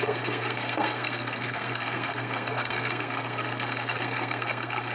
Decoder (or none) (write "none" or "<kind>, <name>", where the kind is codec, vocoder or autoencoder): codec, SNAC